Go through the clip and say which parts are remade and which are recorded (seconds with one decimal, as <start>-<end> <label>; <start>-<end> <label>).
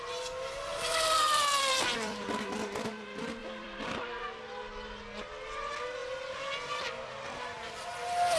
0.0-0.7 recorded; 0.7-2.3 remade; 2.3-3.4 recorded; 3.4-4.3 remade; 4.3-8.4 recorded